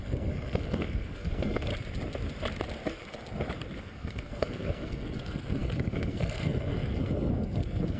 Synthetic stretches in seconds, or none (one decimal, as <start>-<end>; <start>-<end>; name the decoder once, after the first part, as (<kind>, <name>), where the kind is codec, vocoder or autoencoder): 0.0-1.7 (codec, SNAC); 3.8-8.0